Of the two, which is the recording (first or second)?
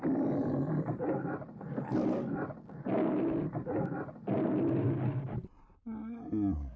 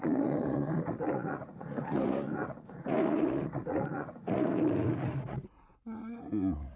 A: first